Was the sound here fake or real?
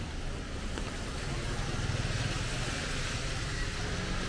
real